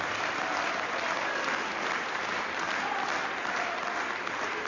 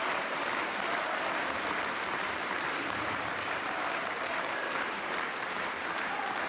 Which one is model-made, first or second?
second